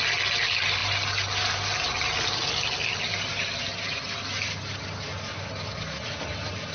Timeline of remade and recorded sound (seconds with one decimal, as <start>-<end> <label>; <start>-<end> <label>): 0.0-6.7 recorded